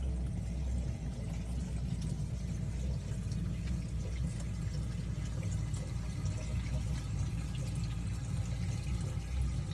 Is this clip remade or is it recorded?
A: recorded